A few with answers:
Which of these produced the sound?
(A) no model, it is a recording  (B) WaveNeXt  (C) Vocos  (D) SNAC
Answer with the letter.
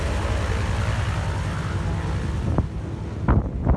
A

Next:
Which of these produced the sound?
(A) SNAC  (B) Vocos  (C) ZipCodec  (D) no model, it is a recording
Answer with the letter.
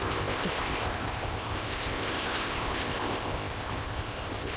C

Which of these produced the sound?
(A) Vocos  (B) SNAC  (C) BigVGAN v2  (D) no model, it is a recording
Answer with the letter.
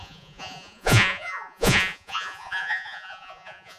A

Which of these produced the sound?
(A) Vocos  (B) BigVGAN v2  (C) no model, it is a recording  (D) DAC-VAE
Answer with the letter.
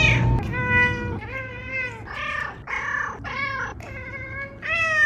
C